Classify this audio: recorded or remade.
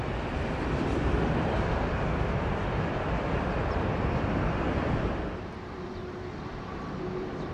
remade